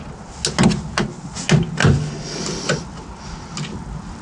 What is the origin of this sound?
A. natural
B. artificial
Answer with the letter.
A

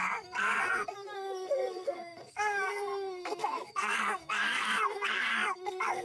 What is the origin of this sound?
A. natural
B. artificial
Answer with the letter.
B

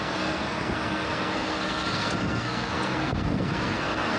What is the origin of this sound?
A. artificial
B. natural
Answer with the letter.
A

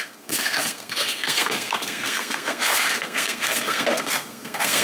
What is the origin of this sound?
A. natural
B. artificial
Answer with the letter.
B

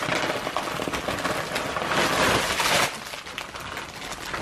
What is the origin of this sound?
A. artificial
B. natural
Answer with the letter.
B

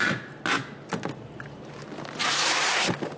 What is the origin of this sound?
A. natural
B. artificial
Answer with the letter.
A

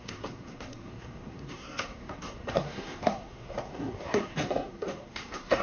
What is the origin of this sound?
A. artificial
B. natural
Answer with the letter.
A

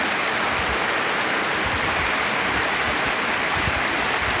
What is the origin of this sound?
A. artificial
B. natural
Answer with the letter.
B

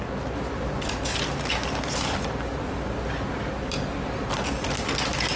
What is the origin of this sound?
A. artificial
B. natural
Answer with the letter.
B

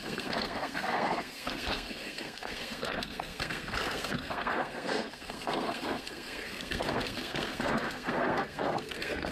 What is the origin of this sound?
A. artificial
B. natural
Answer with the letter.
A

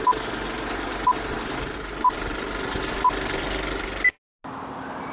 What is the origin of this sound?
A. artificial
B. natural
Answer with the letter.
B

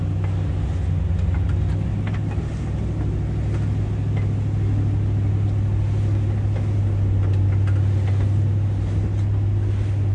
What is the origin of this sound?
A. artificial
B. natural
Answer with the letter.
B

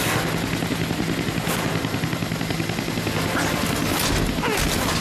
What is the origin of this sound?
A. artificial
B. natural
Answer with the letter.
B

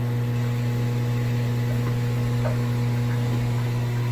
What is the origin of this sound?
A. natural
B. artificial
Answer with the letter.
A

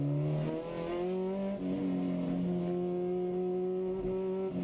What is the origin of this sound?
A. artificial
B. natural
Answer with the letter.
B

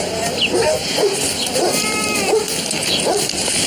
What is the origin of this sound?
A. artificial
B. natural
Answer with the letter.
B